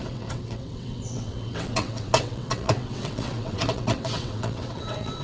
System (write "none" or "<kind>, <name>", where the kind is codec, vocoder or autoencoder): vocoder, WaveNeXt